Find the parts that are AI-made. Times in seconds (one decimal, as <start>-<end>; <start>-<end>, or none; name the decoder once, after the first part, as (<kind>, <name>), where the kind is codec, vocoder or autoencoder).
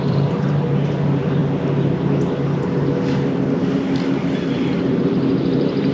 0.0-1.4 (vocoder, BigVGAN v2); 4.9-5.9